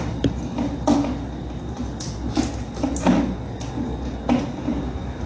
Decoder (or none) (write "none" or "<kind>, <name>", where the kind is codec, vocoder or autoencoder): none